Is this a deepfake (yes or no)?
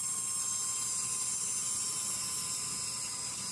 no